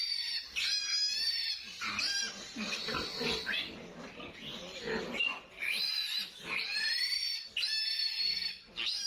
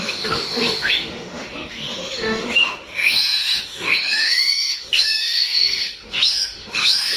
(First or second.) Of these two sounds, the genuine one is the first